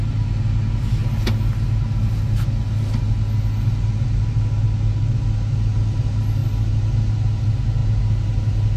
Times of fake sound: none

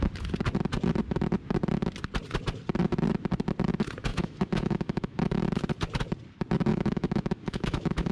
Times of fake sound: 4.1-5.4 (autoencoder, DAC-VAE); 6.7-8.1

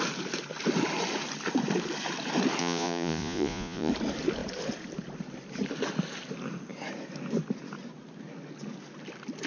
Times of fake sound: 2.6-3.9 (vocoder, Vocos)

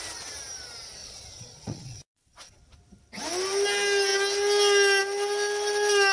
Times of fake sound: 1.0-2.6 (vocoder, Vocos)

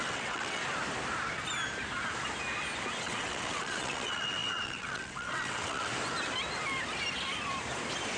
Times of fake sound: 0.0-0.6 (vocoder, WaveNeXt); 3.0-5.9

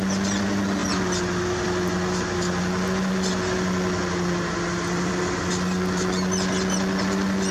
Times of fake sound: none

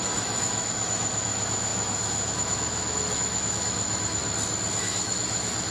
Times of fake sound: 0.0-4.2 (autoencoder, DAC-VAE); 4.8-5.7